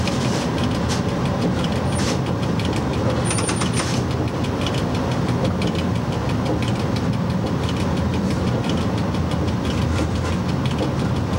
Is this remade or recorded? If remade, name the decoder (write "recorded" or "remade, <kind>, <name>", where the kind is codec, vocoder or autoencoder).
recorded